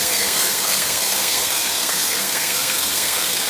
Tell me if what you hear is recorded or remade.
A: remade